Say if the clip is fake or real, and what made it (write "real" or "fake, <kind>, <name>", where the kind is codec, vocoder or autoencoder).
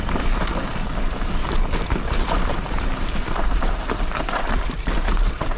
fake, vocoder, BigVGAN v2